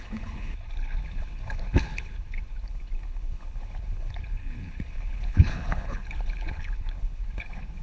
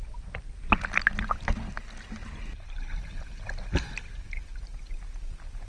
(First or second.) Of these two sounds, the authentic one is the second